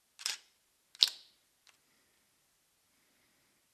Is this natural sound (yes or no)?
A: yes